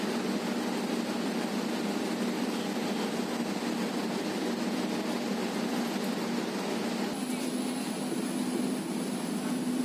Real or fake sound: real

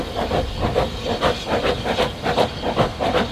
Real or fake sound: real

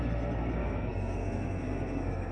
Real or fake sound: fake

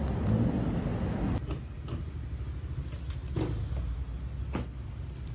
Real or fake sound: real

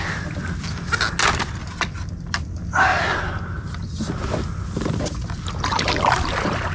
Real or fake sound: real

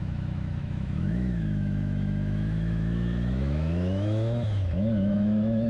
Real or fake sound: fake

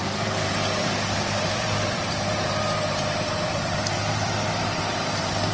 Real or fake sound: fake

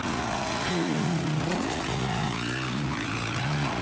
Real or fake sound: fake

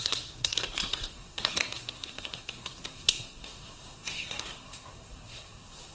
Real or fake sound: fake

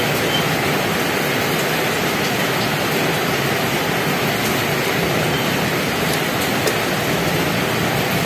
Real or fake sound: real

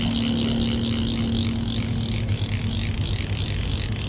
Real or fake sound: real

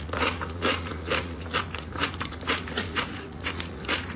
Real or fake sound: fake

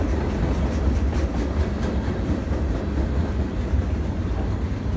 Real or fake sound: real